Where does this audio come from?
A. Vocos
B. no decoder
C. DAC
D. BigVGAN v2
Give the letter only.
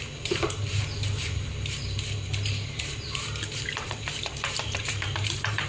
D